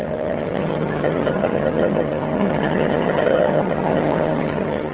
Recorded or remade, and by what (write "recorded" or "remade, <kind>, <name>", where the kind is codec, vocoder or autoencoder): remade, vocoder, HiFi-GAN